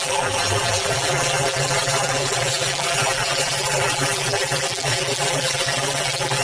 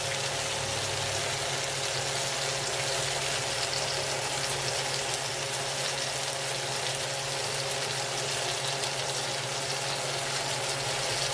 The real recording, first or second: second